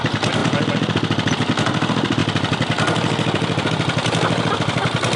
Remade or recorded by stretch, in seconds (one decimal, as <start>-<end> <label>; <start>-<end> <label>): 0.0-5.2 recorded